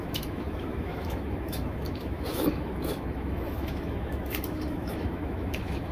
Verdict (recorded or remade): remade